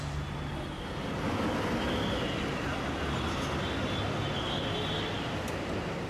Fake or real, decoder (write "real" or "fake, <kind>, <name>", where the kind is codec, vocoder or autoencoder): real